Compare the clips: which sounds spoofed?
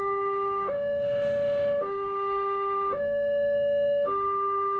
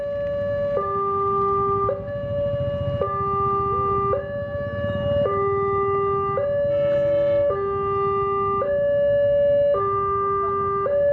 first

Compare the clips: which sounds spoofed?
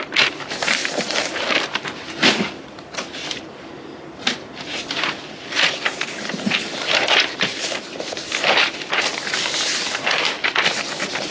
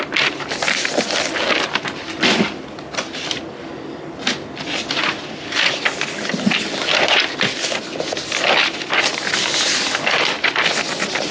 first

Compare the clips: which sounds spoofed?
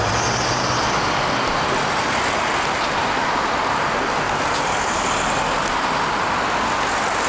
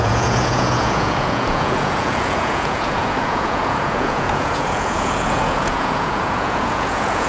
second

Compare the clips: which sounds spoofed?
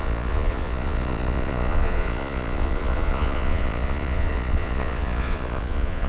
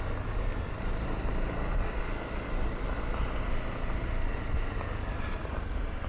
first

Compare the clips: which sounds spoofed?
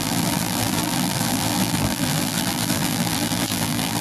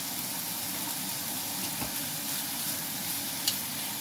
first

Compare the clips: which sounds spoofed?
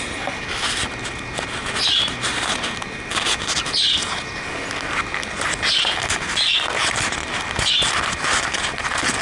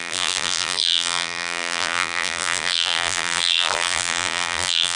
second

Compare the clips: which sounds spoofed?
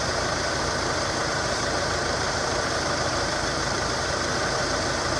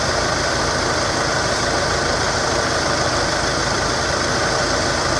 first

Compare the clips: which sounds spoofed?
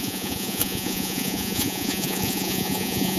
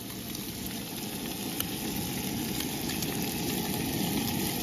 first